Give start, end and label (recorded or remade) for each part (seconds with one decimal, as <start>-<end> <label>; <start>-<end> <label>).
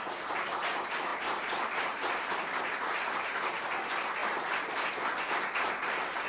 0.0-1.1 recorded; 1.1-2.6 remade; 2.6-4.2 recorded; 4.2-4.8 remade; 4.8-6.3 recorded